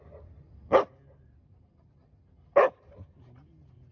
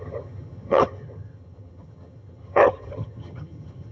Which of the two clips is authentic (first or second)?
first